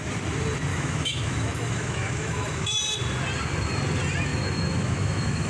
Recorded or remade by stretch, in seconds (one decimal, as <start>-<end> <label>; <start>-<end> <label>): 0.0-0.7 recorded; 0.7-2.8 remade; 2.8-4.3 recorded; 4.3-5.5 remade